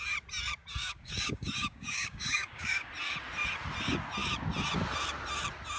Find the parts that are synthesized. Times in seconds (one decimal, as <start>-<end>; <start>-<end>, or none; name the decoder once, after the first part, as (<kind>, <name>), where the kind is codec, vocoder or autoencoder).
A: 0.8-2.9 (codec, DAC)